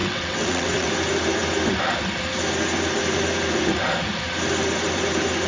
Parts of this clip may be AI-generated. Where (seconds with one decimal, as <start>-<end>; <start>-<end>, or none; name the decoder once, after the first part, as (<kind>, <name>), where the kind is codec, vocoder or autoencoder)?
0.0-0.9 (vocoder, WaveNeXt)